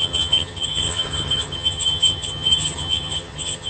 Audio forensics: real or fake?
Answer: fake